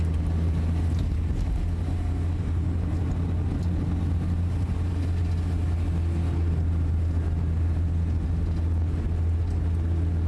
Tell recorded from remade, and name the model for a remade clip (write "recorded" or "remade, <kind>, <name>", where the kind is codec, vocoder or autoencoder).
recorded